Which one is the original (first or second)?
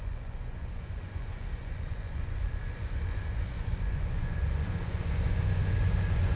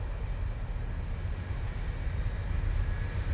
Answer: second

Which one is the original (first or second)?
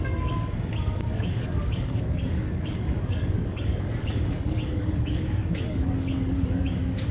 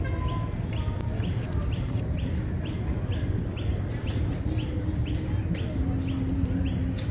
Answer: second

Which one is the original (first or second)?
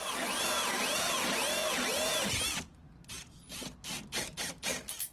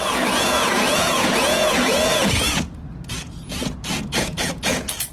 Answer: first